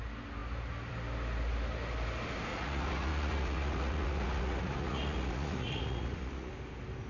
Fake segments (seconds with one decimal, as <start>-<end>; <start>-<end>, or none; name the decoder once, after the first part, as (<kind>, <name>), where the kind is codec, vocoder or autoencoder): 2.5-6.5 (vocoder, Vocos)